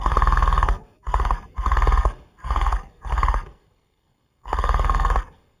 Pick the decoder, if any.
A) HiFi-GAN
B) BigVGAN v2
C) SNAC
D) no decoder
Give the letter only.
C